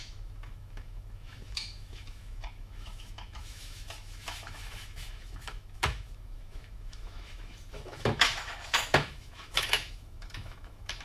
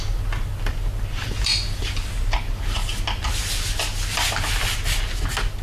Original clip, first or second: second